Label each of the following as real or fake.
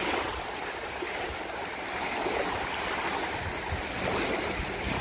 real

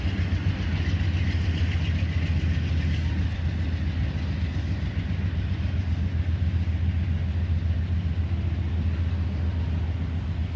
real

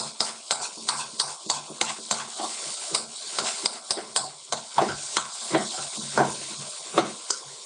fake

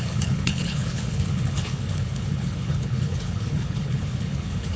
fake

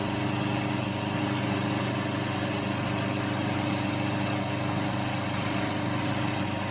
real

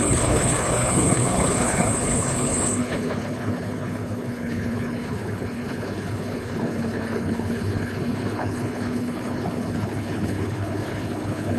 fake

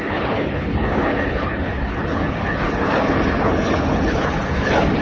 fake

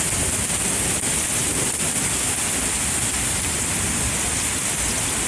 real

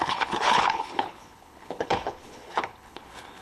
fake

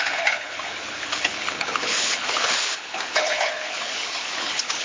fake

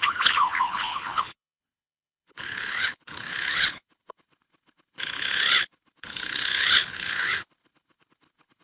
fake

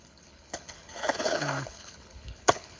fake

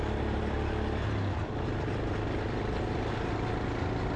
real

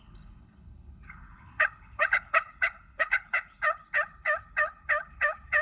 fake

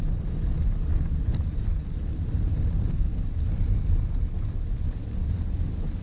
real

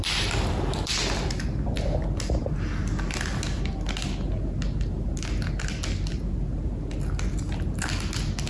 real